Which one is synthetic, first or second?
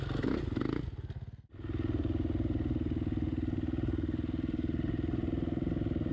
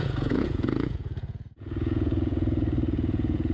second